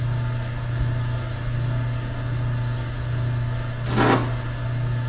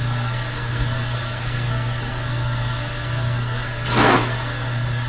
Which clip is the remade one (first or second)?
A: second